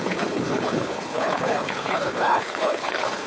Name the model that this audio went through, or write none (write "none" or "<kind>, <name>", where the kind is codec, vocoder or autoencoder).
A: codec, HILCodec